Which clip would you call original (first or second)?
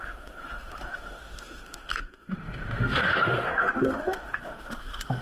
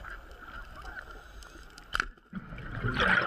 second